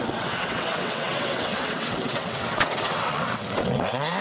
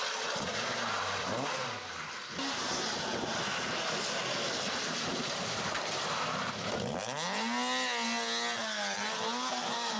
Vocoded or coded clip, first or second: first